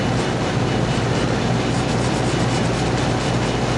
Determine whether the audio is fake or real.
real